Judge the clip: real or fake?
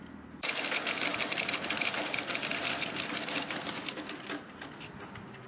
real